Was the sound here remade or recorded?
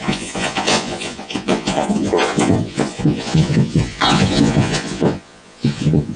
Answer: remade